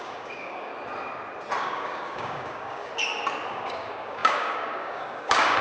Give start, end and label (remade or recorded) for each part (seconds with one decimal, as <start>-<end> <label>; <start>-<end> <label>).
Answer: 0.0-0.7 remade; 0.7-1.6 recorded; 1.6-2.9 remade; 2.9-3.5 recorded; 3.5-5.6 remade